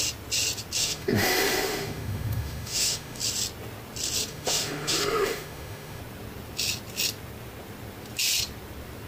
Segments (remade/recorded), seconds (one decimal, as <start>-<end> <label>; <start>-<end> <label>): 0.0-0.8 recorded; 0.8-3.2 remade; 3.2-4.3 recorded; 4.3-6.0 remade; 6.0-9.1 recorded